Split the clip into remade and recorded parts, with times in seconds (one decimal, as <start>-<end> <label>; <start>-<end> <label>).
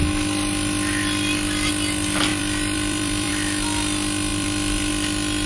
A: 0.0-2.3 recorded; 2.3-3.3 remade; 3.3-4.3 recorded; 4.3-4.9 remade; 4.9-5.5 recorded